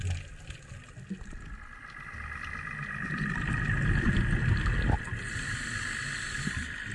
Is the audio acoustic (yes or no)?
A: yes